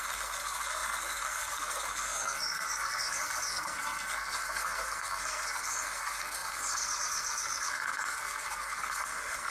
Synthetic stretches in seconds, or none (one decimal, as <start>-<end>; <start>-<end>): 0.0-9.5